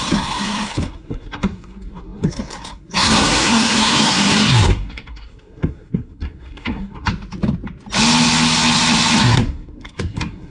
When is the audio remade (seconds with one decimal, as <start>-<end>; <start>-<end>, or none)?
0.0-7.1; 9.2-10.5